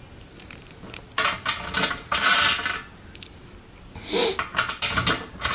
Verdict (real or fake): real